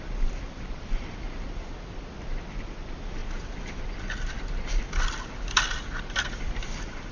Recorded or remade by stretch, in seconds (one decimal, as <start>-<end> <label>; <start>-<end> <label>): 0.0-3.2 remade; 3.2-6.1 recorded; 6.1-7.1 remade